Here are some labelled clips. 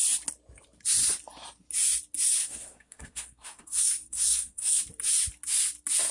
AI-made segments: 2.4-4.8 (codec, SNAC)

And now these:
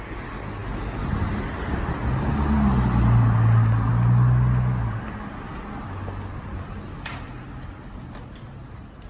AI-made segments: none

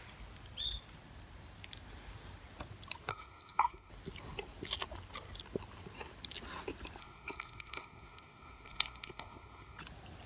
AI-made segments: 3.1-3.9 (codec, SNAC); 7.0-9.8

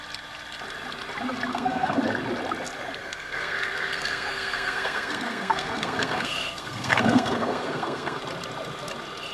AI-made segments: 1.5-2.0 (codec, SNAC); 3.0-8.2

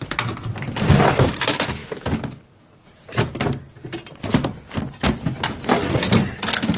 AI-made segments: none